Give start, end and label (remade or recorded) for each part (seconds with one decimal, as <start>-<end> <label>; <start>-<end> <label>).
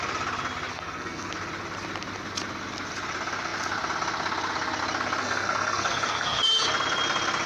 0.0-0.7 recorded; 0.7-1.3 remade; 1.3-5.2 recorded; 5.2-6.4 remade; 6.4-7.5 recorded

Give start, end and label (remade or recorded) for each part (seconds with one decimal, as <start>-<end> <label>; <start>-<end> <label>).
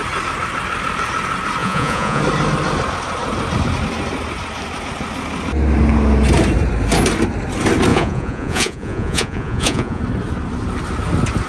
0.0-1.6 recorded; 1.6-2.2 remade; 2.2-7.9 recorded; 7.9-10.0 remade; 10.0-11.5 recorded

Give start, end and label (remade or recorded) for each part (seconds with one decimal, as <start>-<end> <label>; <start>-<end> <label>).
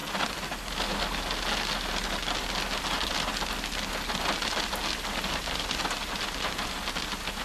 0.0-7.4 recorded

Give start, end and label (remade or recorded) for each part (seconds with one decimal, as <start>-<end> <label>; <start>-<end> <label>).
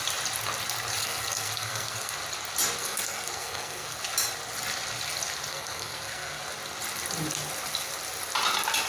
0.0-1.0 recorded; 1.0-2.1 remade; 2.1-2.8 recorded; 2.8-4.0 remade; 4.0-5.5 recorded; 5.5-6.4 remade; 6.4-8.9 recorded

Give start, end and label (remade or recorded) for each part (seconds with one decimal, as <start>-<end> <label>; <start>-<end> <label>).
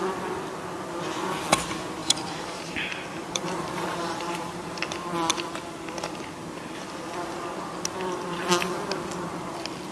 0.0-2.0 recorded; 2.0-4.9 remade; 4.9-9.9 recorded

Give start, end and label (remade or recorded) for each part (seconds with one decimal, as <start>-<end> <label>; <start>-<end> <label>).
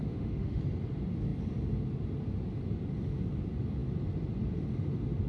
0.0-0.6 remade; 0.6-5.3 recorded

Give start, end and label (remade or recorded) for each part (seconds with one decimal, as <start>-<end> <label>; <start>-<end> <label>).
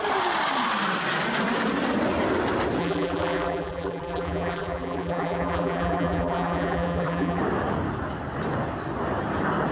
0.0-2.8 recorded; 2.8-7.4 remade; 7.4-9.7 recorded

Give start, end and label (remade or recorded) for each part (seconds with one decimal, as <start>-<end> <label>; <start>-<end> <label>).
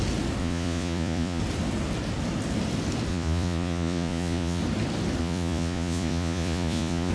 0.0-0.4 recorded; 0.4-1.4 remade; 1.4-3.1 recorded; 3.1-4.6 remade; 4.6-5.2 recorded; 5.2-7.1 remade